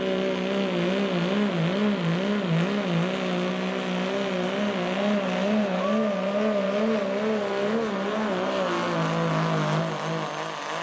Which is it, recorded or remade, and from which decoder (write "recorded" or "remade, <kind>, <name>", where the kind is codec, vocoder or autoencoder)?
recorded